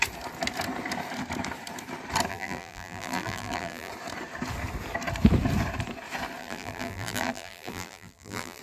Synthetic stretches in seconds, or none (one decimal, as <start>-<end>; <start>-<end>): 2.3-3.9; 6.4-8.6